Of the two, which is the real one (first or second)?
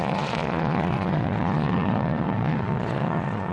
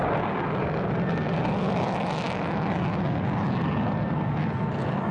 second